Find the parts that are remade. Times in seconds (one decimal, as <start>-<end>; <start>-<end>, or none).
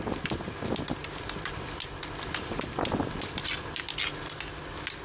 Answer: 1.0-4.0